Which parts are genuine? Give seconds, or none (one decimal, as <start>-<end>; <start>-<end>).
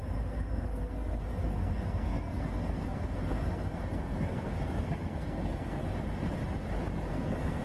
5.8-7.1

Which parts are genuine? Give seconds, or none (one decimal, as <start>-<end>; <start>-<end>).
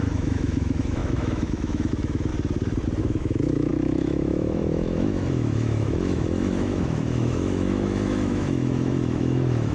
2.3-3.0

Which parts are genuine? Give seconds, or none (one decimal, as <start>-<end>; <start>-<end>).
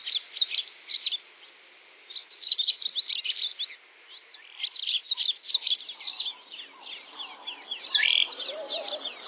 0.0-9.3